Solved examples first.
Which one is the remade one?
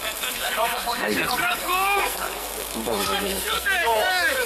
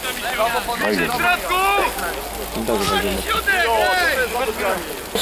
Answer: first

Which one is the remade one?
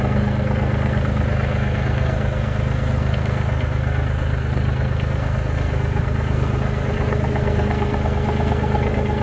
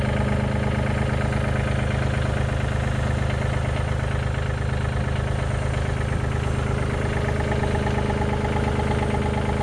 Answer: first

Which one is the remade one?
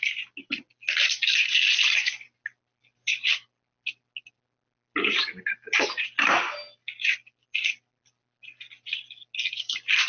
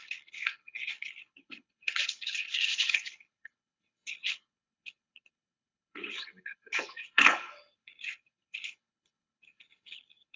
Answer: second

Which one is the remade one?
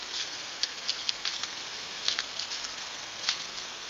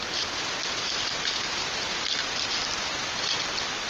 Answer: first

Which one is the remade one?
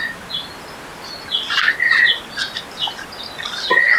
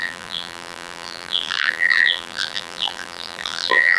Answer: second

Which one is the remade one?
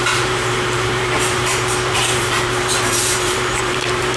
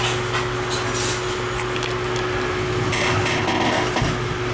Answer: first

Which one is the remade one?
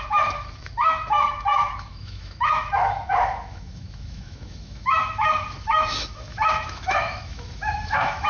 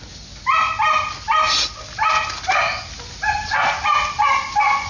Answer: first